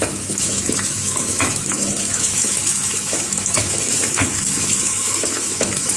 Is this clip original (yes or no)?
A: no